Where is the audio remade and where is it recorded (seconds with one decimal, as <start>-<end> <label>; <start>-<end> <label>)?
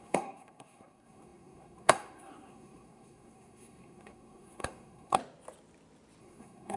0.0-5.2 remade; 5.2-6.2 recorded; 6.2-6.8 remade